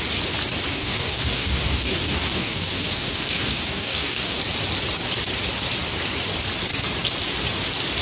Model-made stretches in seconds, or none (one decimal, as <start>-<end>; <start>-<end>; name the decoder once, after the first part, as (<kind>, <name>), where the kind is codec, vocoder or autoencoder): 0.7-4.4 (codec, DAC)